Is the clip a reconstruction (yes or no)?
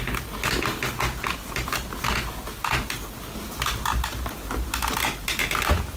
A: no